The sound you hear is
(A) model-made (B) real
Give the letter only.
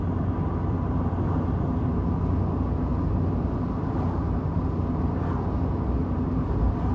B